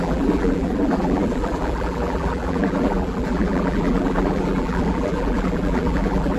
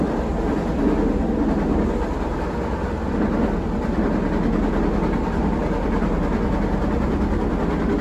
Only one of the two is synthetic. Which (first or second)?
first